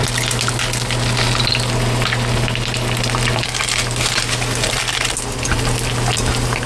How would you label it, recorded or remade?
recorded